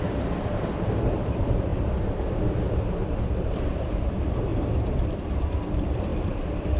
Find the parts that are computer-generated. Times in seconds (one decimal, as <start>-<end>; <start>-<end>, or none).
0.0-4.5; 5.1-6.8